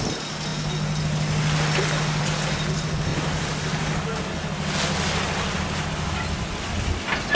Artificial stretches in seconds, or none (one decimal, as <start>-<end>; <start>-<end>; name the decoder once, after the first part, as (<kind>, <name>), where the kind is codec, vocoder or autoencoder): none